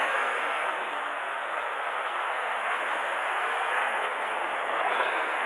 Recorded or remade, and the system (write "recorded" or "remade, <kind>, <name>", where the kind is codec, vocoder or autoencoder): remade, codec, SNAC